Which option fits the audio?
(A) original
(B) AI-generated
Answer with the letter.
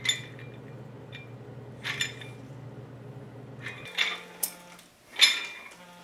A